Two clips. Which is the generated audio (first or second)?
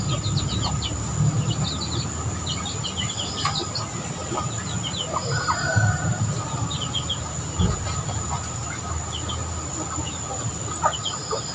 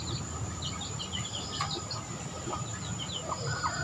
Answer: second